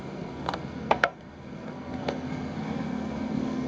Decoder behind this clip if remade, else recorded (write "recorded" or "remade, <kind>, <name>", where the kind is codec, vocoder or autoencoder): remade, codec, SNAC